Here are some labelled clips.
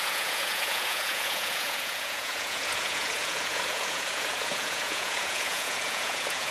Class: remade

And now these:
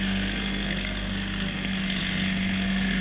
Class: remade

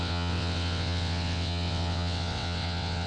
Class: remade